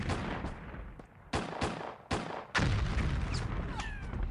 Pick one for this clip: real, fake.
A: real